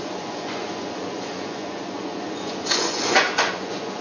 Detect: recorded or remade remade